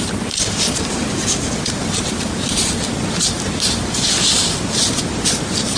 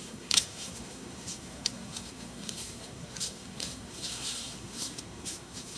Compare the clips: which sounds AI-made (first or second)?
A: second